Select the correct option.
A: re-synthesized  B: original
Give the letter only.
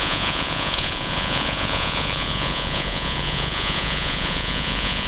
A